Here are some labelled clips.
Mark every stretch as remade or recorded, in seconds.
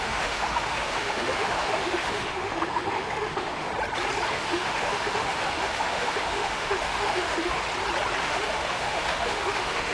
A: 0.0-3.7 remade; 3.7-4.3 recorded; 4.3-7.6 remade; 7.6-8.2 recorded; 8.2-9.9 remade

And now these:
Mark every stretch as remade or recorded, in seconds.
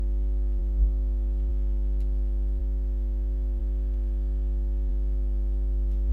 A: 0.0-0.6 recorded; 0.6-1.5 remade; 1.5-2.6 recorded; 2.6-3.6 remade; 3.6-4.9 recorded; 4.9-6.1 remade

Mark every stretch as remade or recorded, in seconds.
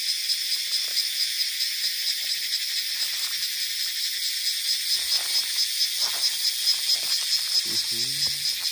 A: 0.0-0.9 recorded; 0.9-1.4 remade; 1.4-8.7 recorded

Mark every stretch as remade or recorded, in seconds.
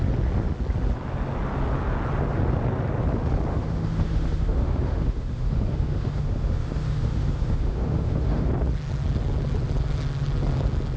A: 0.0-3.5 recorded; 3.5-8.5 remade; 8.5-11.0 recorded